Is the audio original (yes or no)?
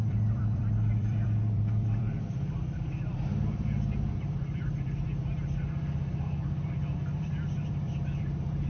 no